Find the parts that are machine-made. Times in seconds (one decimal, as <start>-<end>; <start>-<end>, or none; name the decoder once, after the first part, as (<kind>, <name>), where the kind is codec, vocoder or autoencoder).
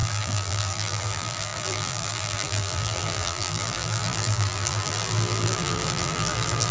0.0-6.7 (vocoder, BigVGAN v2)